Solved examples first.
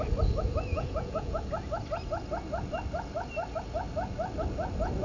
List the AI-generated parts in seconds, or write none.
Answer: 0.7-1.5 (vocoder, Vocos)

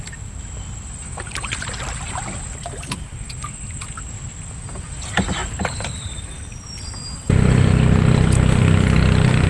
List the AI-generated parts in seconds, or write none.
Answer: none

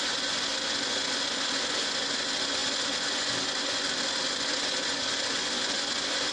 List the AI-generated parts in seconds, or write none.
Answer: 0.0-6.3 (vocoder, Vocos)

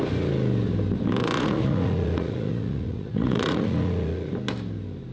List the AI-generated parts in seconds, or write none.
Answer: 1.2-4.3 (vocoder, Vocos)

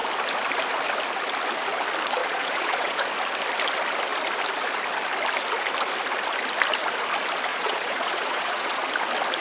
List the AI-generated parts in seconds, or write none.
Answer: 2.2-3.1 (vocoder, Vocos); 7.5-8.9